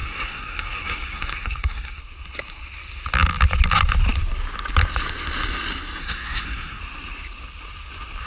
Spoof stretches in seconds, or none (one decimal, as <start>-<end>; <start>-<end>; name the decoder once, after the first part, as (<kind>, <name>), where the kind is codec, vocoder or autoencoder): 0.0-2.0 (codec, SNAC); 6.0-6.8